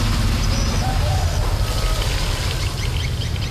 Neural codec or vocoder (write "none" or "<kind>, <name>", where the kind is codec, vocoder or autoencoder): none